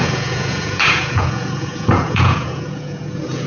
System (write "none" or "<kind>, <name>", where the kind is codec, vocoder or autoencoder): vocoder, Vocos